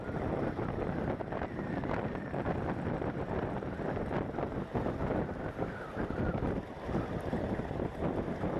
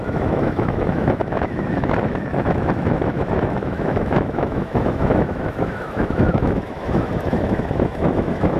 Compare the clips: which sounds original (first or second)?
first